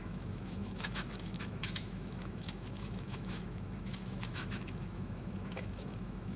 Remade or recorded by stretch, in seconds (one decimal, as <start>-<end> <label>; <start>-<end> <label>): 0.0-6.4 remade